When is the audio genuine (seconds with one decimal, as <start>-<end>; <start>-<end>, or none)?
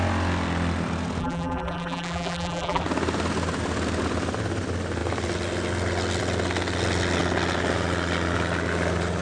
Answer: 0.0-1.2; 2.8-9.2